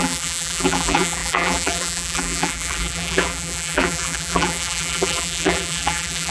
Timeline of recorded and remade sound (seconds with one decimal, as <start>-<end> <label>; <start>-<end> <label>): 0.0-6.3 remade

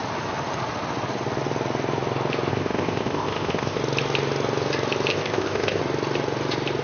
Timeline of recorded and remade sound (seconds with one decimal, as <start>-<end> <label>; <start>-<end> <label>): 0.0-2.5 recorded; 2.5-3.8 remade; 3.8-5.1 recorded; 5.1-5.8 remade; 5.8-6.8 recorded